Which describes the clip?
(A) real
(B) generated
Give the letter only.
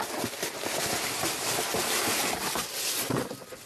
A